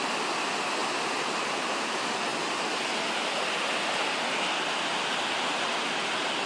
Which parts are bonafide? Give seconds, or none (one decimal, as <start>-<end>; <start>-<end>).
0.0-6.5